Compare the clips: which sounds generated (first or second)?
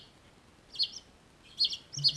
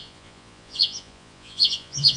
second